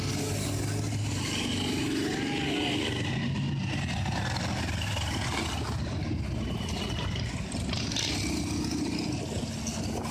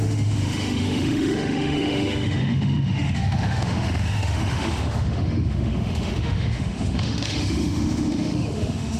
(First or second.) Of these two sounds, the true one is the first